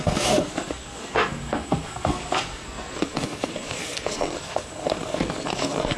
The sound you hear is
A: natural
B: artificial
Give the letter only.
B